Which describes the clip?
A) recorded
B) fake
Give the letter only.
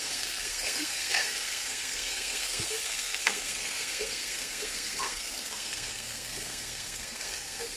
B